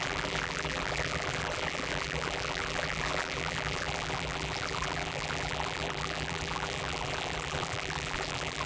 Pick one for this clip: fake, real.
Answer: fake